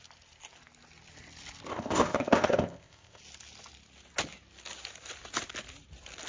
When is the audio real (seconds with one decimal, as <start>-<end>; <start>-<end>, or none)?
0.0-1.7; 3.2-6.3